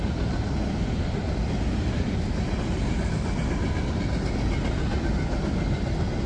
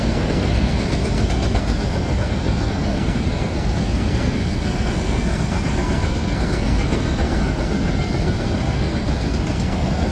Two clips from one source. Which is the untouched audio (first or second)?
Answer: first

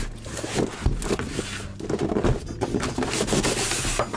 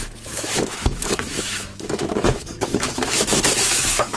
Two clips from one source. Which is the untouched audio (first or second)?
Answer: first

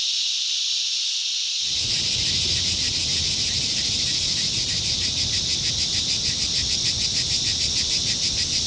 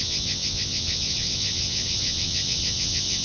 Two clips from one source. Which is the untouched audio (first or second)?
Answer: first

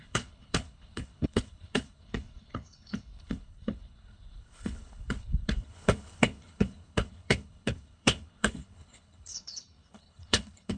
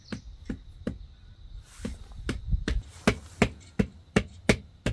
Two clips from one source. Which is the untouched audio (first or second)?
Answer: second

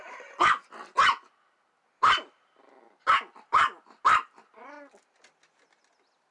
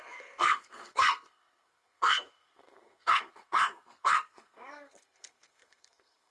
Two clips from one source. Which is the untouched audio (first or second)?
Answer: first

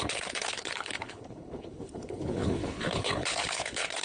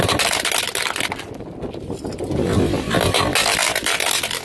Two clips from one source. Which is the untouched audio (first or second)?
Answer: second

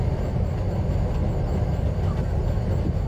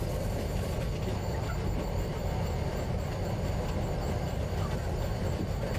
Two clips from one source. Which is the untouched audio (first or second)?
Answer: first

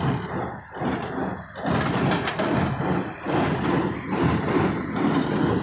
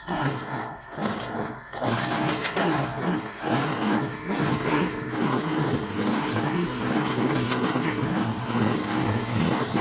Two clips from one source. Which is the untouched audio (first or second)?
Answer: first